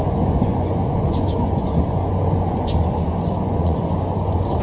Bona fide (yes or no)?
no